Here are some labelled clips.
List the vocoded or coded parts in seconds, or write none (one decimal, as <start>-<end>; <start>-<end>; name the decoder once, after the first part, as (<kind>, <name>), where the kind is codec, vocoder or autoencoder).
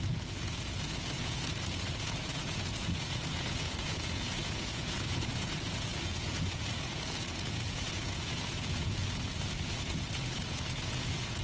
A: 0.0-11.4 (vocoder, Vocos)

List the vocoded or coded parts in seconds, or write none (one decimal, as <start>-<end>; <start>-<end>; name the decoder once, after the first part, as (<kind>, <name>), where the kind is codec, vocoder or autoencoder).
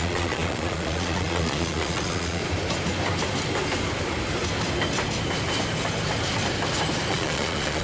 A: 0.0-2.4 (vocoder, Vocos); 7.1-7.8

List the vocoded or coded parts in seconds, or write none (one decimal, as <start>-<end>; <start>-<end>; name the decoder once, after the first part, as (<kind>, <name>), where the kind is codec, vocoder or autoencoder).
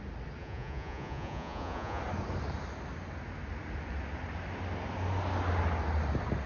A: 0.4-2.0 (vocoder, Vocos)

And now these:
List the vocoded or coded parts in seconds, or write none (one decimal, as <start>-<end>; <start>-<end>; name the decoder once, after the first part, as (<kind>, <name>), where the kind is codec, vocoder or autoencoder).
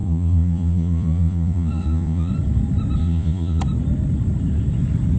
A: 0.0-2.3 (vocoder, Vocos); 3.0-3.6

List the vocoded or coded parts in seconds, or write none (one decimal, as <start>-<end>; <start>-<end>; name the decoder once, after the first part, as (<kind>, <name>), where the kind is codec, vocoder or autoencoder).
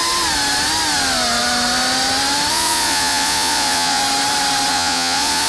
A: 2.5-4.0 (vocoder, Vocos); 4.7-5.5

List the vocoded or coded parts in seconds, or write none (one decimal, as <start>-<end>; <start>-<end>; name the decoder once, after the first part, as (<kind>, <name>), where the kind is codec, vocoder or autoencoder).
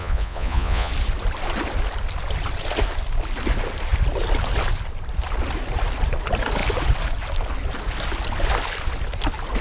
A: 0.0-0.9 (vocoder, Vocos)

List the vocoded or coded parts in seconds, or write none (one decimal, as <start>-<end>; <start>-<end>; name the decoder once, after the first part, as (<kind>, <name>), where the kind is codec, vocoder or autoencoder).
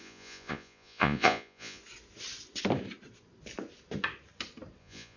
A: 0.0-1.8 (vocoder, Vocos); 4.8-5.2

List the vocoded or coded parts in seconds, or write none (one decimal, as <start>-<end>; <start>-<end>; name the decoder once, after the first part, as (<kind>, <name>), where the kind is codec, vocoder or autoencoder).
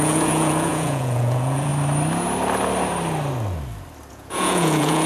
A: 0.0-1.7 (vocoder, Vocos); 4.1-5.1